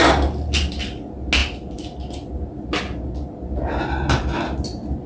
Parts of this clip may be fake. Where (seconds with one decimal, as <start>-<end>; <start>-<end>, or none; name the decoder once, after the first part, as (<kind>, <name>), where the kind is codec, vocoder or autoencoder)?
none